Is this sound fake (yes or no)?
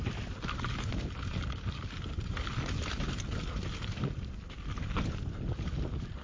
no